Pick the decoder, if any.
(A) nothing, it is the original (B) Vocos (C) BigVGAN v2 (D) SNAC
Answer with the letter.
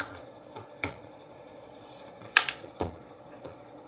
B